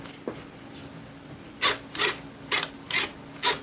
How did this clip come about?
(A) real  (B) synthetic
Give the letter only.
A